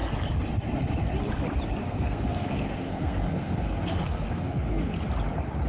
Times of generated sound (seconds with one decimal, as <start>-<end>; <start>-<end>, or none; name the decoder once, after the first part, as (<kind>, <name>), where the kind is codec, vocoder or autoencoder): 1.8-4.9 (codec, SNAC)